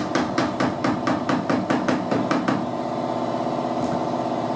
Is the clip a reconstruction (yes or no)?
no